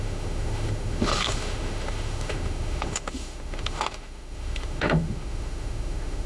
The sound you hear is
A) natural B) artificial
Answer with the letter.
B